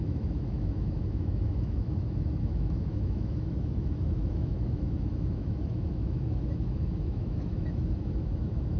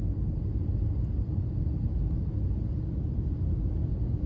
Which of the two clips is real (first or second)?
second